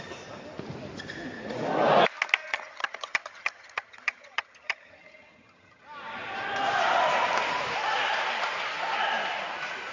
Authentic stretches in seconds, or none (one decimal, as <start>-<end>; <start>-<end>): 0.0-2.4; 5.8-9.9